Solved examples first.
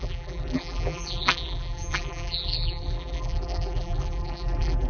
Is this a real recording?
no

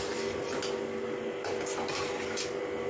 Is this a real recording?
yes